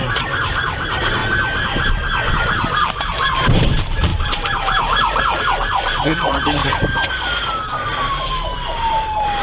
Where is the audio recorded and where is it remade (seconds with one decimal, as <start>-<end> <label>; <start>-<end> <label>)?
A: 0.0-1.2 remade; 1.2-2.3 recorded; 2.3-6.6 remade; 6.6-8.0 recorded; 8.0-9.4 remade